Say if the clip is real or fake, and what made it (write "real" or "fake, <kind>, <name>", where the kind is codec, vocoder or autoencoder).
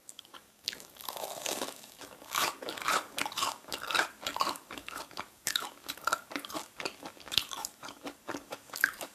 fake, codec, DAC